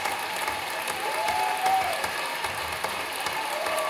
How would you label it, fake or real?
fake